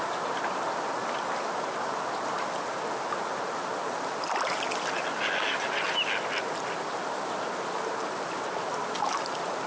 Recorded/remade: recorded